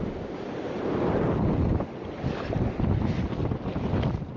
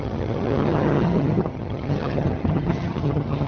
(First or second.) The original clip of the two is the first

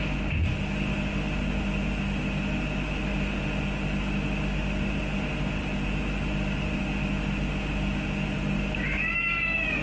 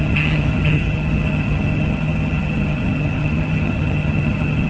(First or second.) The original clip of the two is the first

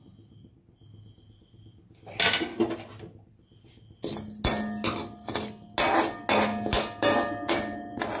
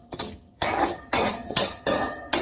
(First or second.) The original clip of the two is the first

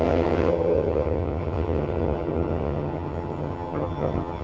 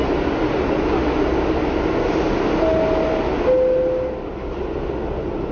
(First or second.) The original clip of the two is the second